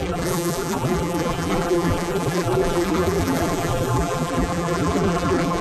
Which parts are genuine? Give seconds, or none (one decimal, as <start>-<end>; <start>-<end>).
none